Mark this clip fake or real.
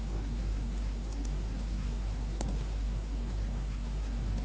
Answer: fake